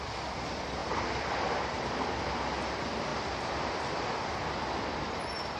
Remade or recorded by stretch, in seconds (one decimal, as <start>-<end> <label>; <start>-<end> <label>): 0.0-0.8 recorded; 0.8-2.2 remade; 2.2-3.1 recorded; 3.1-3.8 remade; 3.8-5.6 recorded

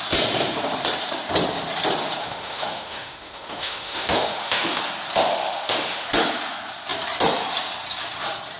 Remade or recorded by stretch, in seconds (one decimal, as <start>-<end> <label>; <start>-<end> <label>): 0.0-2.2 recorded; 2.2-4.8 remade; 4.8-5.3 recorded; 5.3-6.1 remade; 6.1-8.6 recorded

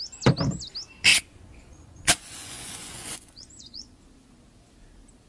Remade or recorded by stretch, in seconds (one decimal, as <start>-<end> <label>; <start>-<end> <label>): 0.0-1.1 recorded; 1.1-4.0 remade; 4.0-5.3 recorded

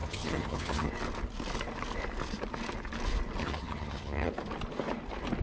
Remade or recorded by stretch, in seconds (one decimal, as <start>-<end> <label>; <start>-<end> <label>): 0.0-0.9 remade; 0.9-3.4 recorded; 3.4-4.3 remade; 4.3-5.4 recorded